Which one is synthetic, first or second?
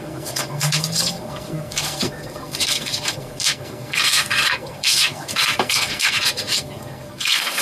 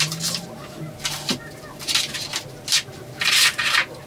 first